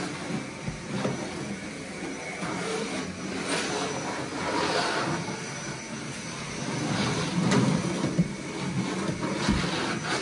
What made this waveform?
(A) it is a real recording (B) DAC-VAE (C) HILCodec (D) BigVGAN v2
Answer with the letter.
A